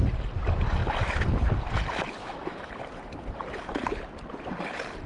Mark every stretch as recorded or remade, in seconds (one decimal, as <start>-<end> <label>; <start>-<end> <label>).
0.0-2.2 recorded; 2.2-2.7 remade; 2.7-5.1 recorded